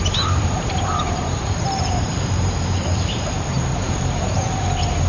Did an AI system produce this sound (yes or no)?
yes